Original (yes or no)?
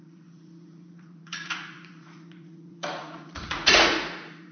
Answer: no